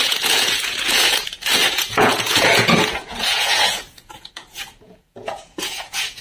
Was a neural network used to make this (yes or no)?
yes